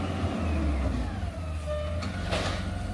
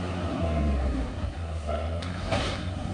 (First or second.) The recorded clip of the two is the first